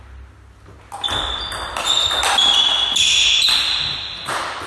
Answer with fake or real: real